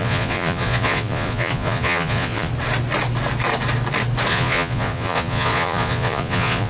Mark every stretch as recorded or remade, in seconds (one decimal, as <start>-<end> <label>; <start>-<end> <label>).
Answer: 0.0-2.5 remade; 2.5-4.3 recorded; 4.3-6.7 remade